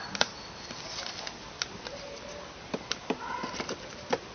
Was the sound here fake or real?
fake